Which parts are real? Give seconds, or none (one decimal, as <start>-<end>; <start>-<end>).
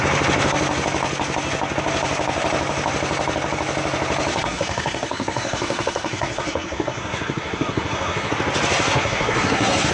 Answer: 0.0-4.3; 8.3-8.9